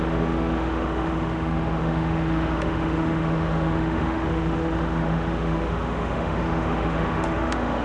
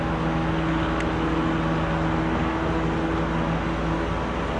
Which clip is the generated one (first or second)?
first